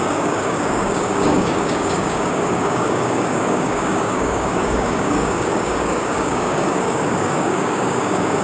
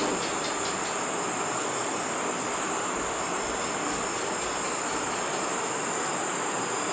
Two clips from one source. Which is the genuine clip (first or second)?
second